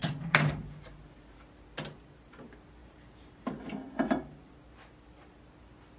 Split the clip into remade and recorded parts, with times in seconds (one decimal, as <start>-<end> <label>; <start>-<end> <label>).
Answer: 0.0-1.0 remade; 1.0-2.8 recorded; 2.8-3.5 remade; 3.5-6.0 recorded